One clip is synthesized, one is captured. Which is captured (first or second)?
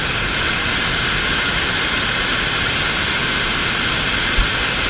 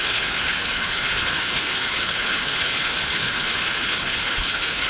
first